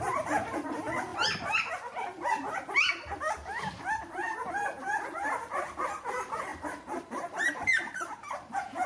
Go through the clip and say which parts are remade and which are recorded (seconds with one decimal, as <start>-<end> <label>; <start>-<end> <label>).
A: 0.0-8.9 remade